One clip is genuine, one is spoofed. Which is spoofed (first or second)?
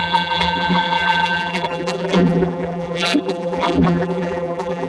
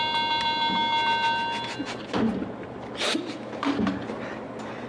first